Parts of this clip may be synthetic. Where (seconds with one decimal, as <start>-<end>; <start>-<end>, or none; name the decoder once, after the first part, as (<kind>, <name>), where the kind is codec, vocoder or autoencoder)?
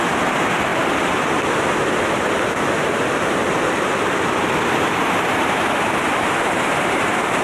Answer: 0.0-0.7 (vocoder, BigVGAN v2); 5.1-7.4